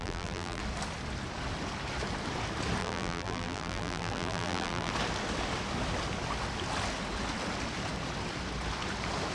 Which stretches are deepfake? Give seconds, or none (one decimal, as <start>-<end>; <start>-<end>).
0.0-0.6; 2.8-4.9